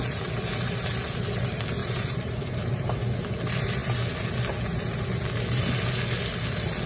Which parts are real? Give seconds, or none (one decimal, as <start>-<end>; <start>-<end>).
0.0-1.8; 3.0-6.9

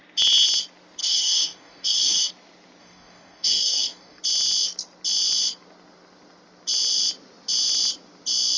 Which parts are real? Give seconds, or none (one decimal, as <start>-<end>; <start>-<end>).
0.0-1.0; 2.3-2.8; 4.2-8.6

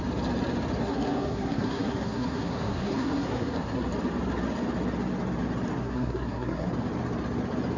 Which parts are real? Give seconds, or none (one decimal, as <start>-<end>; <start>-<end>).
0.0-0.8; 3.9-5.8; 6.7-7.8

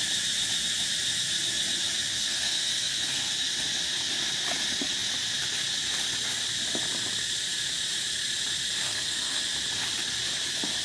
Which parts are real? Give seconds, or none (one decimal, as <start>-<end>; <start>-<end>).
0.0-2.1; 3.3-8.8; 9.4-10.8

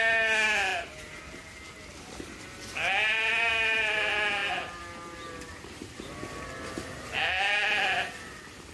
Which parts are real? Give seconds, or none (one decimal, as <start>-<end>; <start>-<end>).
0.0-8.7

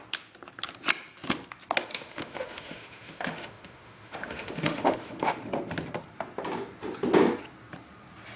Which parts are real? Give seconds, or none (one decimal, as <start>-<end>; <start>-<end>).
0.0-1.9; 5.4-8.4

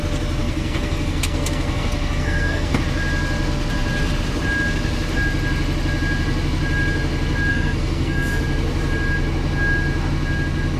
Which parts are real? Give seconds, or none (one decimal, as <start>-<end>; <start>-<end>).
0.0-0.4; 2.8-7.5; 8.4-10.8

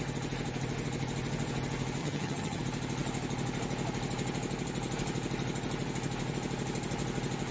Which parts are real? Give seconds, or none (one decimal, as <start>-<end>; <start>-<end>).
0.0-2.0; 2.6-7.5